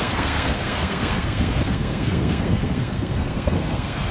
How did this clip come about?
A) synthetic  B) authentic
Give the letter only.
A